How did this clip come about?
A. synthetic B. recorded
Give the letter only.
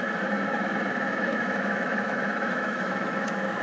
A